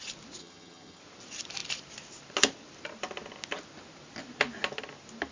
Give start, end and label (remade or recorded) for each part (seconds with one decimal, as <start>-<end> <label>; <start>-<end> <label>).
0.0-0.4 recorded; 0.4-1.0 remade; 1.0-5.3 recorded